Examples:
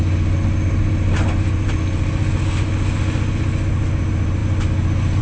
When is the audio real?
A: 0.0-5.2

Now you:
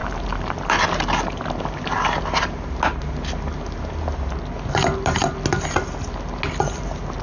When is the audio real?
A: 0.8-7.2

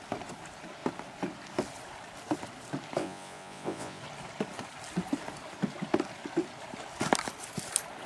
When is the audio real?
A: 0.0-3.0; 4.0-8.1

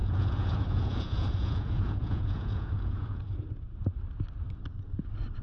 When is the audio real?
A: 3.2-5.4

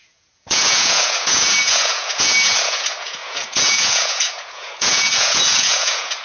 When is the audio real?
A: none

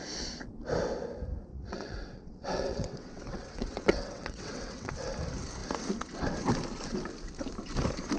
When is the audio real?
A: 0.0-1.5; 4.9-8.2

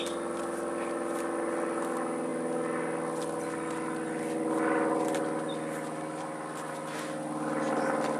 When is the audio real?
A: 0.0-8.2